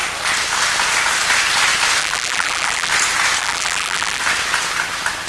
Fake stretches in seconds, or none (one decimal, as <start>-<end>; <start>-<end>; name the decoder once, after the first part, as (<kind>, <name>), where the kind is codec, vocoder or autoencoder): 2.0-2.9 (vocoder, BigVGAN v2); 3.4-4.2